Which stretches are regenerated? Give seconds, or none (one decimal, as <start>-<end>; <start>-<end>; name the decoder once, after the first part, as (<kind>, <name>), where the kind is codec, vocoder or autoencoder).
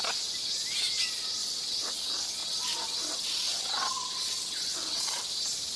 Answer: 1.4-1.9 (vocoder, WaveNeXt); 2.4-5.3